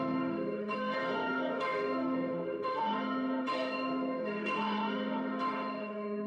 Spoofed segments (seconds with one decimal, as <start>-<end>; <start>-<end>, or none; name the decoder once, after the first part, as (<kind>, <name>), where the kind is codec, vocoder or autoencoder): 0.0-6.3 (autoencoder, DAC-VAE)